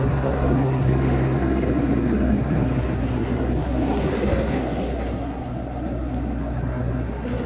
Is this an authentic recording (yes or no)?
no